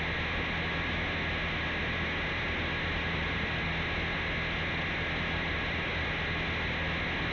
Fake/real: real